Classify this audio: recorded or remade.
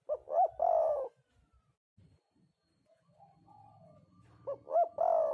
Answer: recorded